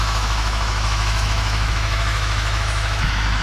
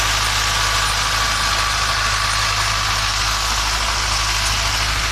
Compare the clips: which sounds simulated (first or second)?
first